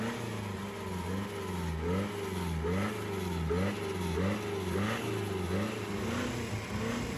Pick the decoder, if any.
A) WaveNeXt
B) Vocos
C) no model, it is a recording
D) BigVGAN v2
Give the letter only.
C